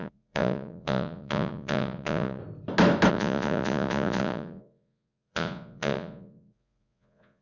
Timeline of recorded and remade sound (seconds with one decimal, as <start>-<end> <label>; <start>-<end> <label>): 0.0-2.4 remade; 2.4-3.1 recorded; 3.1-7.4 remade